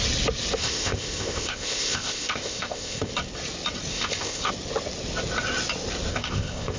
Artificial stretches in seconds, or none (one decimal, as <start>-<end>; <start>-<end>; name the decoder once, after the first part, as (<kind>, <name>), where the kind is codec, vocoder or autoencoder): 0.6-3.1 (codec, ZipCodec); 3.9-4.5; 6.1-6.8